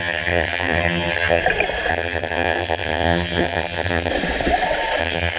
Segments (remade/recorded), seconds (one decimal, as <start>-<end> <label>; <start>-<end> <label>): 0.0-1.4 remade; 1.4-1.9 recorded; 1.9-4.1 remade; 4.1-5.0 recorded; 5.0-5.4 remade